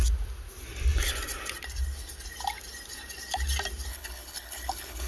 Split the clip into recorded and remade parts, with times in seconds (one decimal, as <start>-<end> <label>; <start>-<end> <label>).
0.0-3.9 recorded; 3.9-5.1 remade